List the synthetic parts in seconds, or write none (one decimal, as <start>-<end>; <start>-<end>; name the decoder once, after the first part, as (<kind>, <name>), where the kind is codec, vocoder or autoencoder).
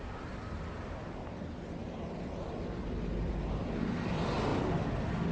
none